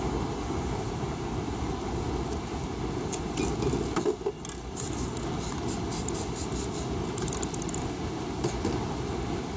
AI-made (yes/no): no